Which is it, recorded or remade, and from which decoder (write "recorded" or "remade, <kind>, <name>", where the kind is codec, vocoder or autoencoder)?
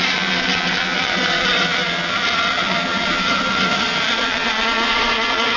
remade, vocoder, WaveNeXt